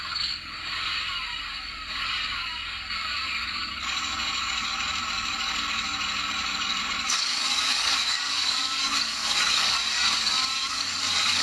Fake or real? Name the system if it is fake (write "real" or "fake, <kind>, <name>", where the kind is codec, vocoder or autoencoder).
fake, codec, DAC